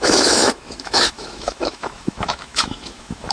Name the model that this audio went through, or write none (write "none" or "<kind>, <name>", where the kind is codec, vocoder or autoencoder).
autoencoder, DAC-VAE